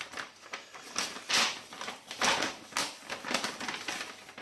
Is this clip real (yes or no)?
yes